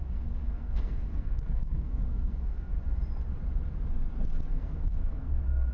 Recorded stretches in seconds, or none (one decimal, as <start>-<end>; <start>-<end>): 2.8-4.5